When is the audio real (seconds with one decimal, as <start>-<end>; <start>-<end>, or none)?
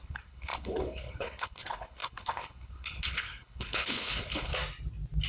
4.5-5.3